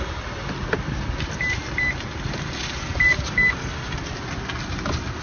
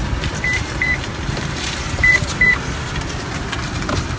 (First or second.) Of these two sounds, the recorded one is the first